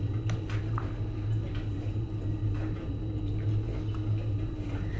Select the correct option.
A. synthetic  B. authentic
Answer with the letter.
B